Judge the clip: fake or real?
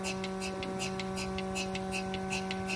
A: real